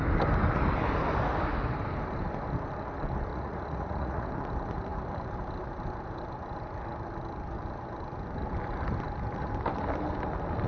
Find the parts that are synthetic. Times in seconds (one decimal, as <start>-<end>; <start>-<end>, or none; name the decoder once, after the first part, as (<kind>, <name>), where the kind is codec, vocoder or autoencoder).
3.3-4.3 (vocoder, Vocos)